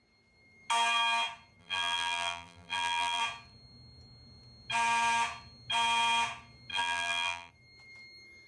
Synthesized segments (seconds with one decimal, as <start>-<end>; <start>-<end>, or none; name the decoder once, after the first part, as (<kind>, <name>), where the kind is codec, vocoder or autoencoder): 1.6-3.2 (vocoder, BigVGAN v2); 6.7-7.5